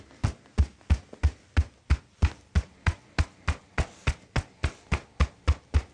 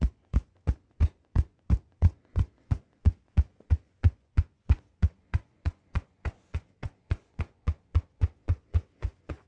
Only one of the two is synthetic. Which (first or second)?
second